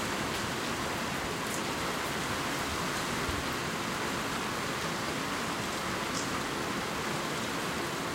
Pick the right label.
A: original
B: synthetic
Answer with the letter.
A